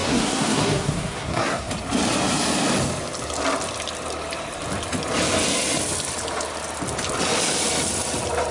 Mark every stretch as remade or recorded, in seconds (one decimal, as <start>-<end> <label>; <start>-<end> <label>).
0.0-1.7 remade; 1.7-8.5 recorded